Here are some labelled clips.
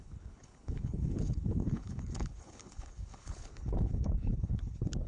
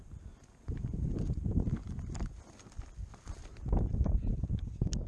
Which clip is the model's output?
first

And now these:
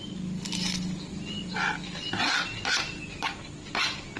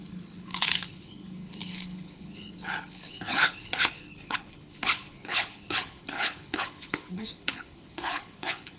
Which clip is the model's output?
second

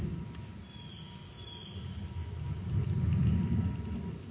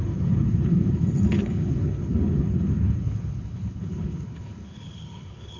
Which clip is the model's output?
second